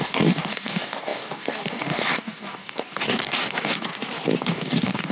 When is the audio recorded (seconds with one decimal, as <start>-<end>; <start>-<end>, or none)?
3.9-4.4